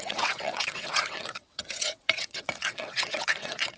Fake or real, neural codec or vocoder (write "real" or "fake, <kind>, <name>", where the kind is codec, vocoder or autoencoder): fake, vocoder, WaveNeXt